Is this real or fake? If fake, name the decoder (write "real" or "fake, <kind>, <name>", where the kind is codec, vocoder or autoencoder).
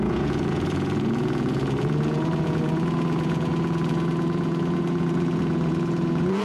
fake, vocoder, Vocos